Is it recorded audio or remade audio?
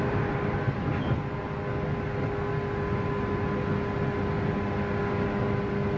recorded